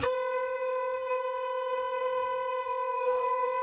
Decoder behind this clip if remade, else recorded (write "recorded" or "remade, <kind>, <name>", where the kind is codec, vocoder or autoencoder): remade, vocoder, Vocos